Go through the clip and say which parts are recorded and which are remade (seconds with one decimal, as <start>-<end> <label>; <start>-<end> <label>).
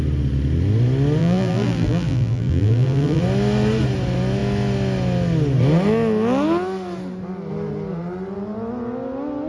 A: 0.0-1.2 recorded; 1.2-3.2 remade; 3.2-9.5 recorded